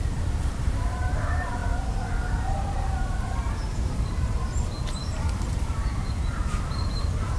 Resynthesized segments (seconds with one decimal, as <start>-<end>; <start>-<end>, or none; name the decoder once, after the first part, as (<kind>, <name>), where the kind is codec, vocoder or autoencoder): 0.0-1.6 (vocoder, BigVGAN v2); 2.4-7.4